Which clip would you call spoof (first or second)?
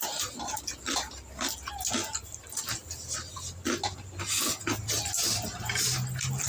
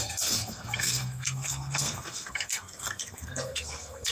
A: second